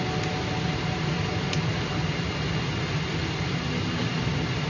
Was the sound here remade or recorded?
recorded